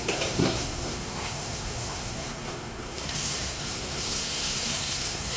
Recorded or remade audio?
remade